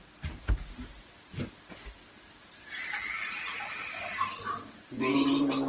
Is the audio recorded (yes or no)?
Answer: yes